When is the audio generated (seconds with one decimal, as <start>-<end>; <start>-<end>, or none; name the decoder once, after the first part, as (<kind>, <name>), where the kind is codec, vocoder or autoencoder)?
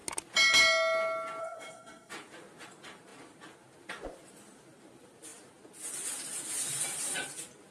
1.4-2.1 (codec, SNAC)